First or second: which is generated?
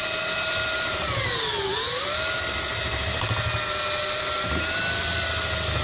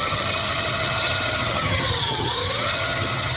second